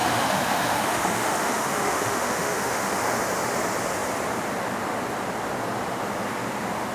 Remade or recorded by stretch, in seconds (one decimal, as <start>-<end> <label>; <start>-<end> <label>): 0.0-3.0 remade; 3.0-6.9 recorded